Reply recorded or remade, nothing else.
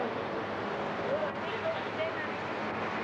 recorded